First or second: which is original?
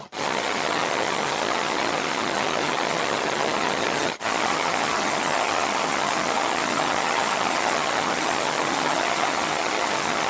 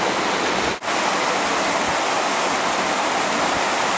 second